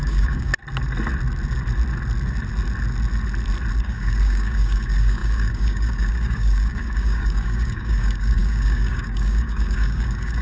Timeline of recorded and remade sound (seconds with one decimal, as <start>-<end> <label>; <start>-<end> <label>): 0.0-0.5 remade; 0.5-3.8 recorded; 3.8-10.4 remade